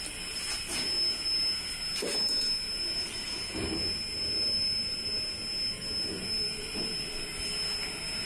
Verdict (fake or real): real